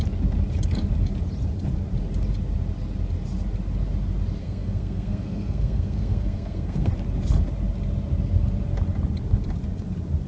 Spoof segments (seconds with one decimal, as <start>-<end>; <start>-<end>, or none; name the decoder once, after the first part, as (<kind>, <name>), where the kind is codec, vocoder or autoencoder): 4.4-6.9 (codec, SNAC)